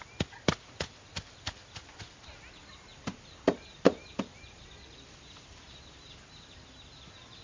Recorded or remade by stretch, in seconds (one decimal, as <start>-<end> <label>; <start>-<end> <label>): 0.0-2.9 recorded; 2.9-5.8 remade; 5.8-7.4 recorded